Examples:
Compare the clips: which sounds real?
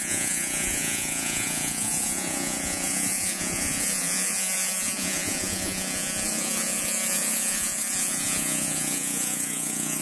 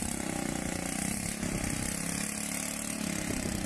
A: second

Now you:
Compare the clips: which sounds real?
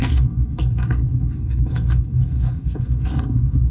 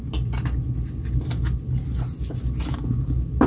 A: second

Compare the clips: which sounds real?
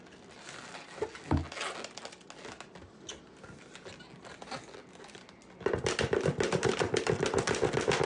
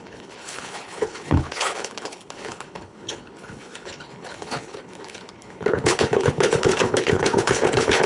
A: first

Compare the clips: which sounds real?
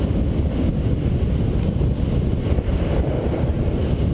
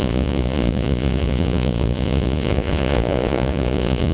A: first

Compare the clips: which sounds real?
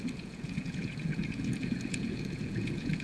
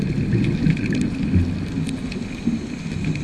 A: second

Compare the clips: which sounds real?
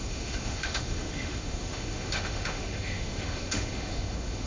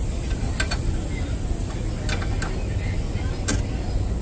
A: second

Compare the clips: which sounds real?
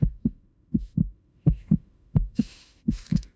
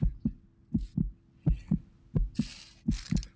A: second